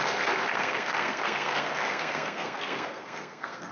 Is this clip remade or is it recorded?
remade